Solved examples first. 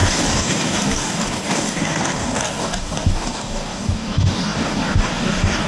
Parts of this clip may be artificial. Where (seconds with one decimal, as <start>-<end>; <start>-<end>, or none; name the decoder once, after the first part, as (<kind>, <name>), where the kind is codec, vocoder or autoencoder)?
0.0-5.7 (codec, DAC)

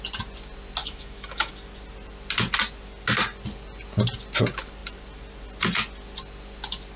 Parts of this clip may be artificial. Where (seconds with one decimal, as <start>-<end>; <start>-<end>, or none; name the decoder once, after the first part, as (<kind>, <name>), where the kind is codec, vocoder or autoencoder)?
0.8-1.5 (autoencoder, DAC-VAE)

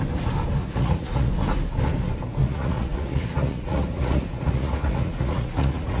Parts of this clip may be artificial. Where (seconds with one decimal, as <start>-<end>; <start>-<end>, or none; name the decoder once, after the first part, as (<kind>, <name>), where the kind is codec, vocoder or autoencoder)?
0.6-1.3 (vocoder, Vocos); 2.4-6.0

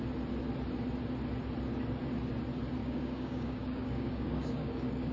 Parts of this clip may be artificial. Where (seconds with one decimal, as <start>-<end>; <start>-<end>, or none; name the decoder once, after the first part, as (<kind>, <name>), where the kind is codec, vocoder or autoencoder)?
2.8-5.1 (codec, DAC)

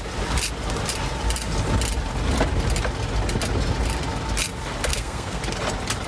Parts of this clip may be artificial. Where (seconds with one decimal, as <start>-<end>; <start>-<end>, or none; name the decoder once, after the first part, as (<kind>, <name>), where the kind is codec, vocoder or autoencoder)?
4.9-5.4 (codec, SNAC)

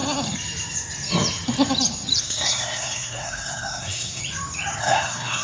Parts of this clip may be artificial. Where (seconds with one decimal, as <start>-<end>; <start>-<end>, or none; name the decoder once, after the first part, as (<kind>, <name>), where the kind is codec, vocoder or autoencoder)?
2.2-4.2 (codec, SNAC); 4.8-5.4

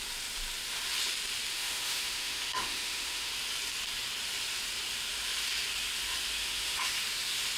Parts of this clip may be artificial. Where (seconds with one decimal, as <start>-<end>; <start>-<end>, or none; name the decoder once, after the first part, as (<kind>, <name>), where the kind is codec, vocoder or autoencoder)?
1.5-3.3 (autoencoder, DAC-VAE); 6.4-7.0